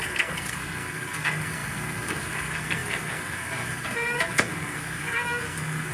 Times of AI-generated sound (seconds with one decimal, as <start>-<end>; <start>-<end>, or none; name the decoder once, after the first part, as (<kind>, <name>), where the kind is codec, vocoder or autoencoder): 0.0-5.9 (codec, SNAC)